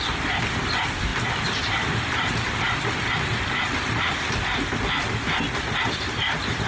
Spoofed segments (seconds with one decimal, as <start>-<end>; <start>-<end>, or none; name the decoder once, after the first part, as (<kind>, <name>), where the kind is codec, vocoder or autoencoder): none